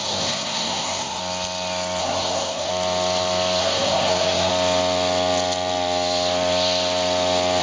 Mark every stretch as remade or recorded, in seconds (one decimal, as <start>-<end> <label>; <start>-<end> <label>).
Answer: 0.0-1.2 remade; 1.2-2.0 recorded; 2.0-2.7 remade; 2.7-3.6 recorded; 3.6-4.5 remade; 4.5-7.6 recorded